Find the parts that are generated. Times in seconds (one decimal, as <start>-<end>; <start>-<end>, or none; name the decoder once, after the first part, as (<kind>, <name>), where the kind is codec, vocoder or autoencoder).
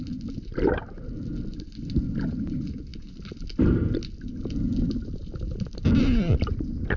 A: none